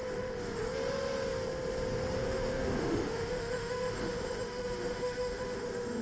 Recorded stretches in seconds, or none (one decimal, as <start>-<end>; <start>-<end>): 0.6-2.2